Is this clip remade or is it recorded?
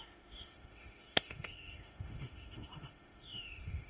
remade